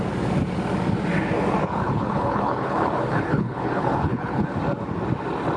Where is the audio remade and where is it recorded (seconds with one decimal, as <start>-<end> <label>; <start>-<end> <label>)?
0.0-1.6 recorded; 1.6-4.4 remade; 4.4-5.6 recorded